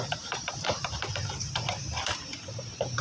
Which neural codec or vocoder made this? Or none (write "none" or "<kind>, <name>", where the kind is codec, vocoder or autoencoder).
vocoder, BigVGAN v2